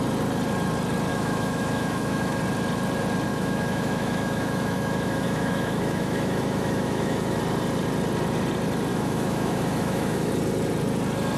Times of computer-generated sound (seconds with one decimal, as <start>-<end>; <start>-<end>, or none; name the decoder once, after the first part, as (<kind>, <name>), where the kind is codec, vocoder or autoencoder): 1.1-2.4 (autoencoder, DAC-VAE); 3.3-7.4; 8.9-10.3